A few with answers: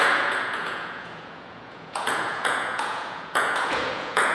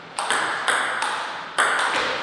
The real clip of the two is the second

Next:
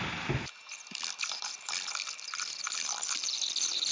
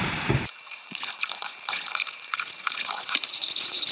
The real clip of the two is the first